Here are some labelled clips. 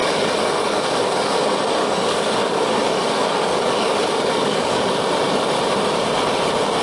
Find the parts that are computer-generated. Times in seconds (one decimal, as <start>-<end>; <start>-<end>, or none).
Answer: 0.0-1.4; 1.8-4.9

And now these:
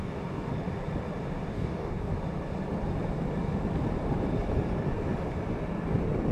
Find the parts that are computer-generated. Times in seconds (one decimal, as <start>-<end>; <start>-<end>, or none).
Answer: 0.0-0.5; 1.5-2.1

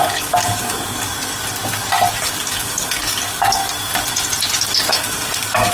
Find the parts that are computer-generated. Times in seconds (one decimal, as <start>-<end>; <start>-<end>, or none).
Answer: 0.0-1.1; 2.2-3.6; 4.9-5.7

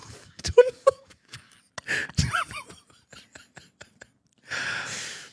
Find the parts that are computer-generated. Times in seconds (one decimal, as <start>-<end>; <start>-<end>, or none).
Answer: 0.0-1.6

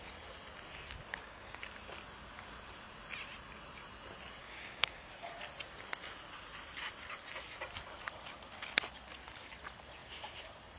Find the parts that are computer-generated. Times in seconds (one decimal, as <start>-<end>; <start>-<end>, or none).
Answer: 1.1-1.6; 4.4-5.1

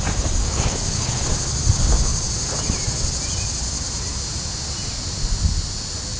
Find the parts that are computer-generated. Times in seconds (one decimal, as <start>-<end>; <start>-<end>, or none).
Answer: 0.4-1.2

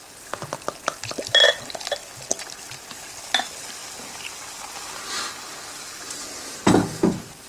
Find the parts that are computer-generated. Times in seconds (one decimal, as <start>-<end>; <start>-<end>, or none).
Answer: none

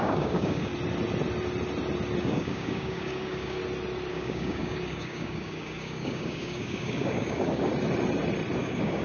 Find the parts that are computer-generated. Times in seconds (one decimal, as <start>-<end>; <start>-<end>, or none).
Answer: 0.0-0.7; 2.2-3.6; 4.1-7.7; 8.6-9.0